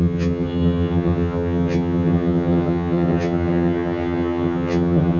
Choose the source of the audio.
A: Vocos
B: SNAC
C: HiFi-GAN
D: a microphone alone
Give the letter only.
C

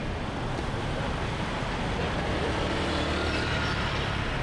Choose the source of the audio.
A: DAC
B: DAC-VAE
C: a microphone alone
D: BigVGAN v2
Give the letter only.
C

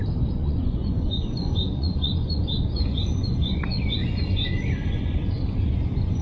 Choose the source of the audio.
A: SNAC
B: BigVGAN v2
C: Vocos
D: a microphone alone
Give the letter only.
C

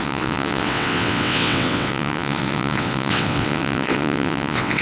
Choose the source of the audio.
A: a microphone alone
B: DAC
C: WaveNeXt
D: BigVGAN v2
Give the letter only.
C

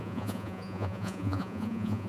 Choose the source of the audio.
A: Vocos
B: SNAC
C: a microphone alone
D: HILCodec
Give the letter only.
A